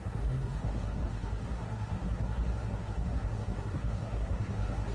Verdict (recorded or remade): remade